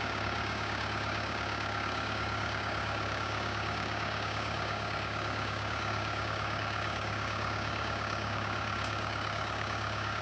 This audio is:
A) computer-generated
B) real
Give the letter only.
A